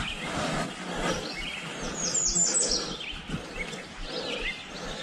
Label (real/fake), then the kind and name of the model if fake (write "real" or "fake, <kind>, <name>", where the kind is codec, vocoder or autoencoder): real